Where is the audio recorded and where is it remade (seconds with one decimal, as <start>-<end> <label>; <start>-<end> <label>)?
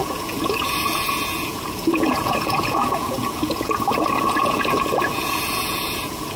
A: 0.0-6.4 remade